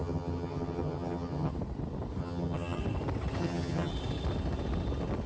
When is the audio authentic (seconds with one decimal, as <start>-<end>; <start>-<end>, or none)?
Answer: 1.5-2.2; 2.8-3.4; 3.9-5.3

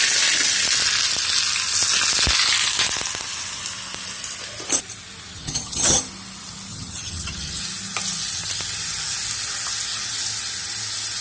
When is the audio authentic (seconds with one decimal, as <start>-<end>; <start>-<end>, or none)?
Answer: 0.0-5.3; 6.0-6.7; 7.6-11.2

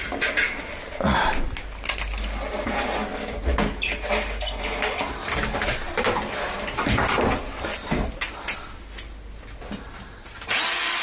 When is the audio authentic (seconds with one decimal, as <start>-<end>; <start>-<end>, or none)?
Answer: 0.0-11.0

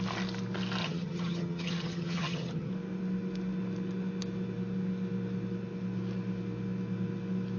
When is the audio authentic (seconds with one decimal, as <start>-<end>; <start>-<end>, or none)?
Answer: 0.0-0.8; 2.7-7.6

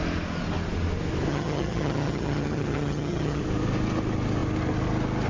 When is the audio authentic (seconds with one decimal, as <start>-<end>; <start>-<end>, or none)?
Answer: 0.0-1.3; 3.4-5.3